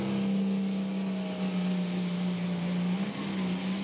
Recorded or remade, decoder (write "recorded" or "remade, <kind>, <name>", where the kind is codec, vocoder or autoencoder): recorded